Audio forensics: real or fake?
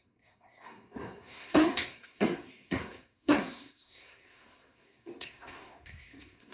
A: fake